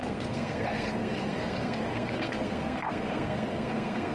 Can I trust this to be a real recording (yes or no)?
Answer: no